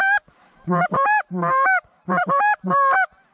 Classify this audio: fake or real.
real